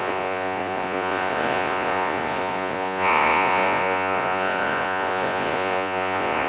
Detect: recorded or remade remade